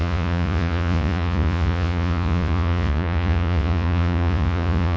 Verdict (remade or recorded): remade